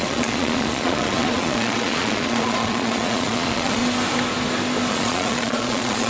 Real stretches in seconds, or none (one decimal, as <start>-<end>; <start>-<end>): 3.8-4.9